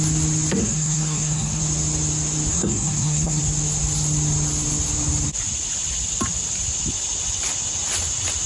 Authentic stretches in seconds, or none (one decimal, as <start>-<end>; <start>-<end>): 0.0-0.6; 1.6-2.5; 3.4-8.5